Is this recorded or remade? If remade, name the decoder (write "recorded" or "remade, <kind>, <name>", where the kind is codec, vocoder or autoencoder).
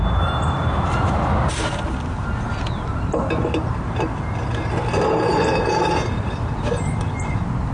recorded